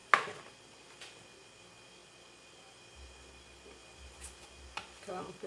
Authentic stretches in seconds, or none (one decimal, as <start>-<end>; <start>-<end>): 0.0-5.5